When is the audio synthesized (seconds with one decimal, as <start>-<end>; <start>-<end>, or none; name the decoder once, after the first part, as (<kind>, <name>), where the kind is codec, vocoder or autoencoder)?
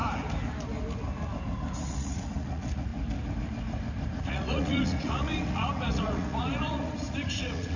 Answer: 1.9-2.9 (vocoder, Vocos); 4.2-7.8